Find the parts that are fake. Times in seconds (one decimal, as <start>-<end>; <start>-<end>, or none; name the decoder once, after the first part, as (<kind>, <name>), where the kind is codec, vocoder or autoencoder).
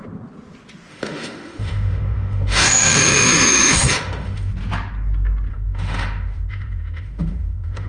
0.9-4.5 (autoencoder, DAC-VAE); 5.5-7.9